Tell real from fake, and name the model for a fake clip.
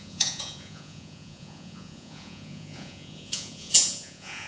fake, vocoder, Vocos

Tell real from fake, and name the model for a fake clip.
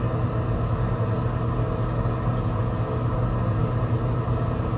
real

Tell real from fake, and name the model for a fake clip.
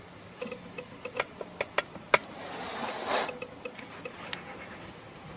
real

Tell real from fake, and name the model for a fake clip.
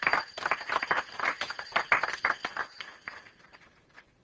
real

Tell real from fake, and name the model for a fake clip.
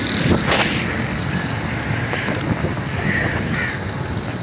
real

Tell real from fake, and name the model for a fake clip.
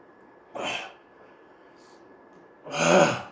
real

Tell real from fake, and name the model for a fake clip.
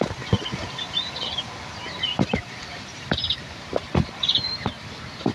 fake, vocoder, BigVGAN v2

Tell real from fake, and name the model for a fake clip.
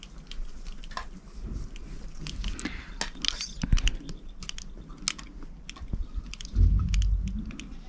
real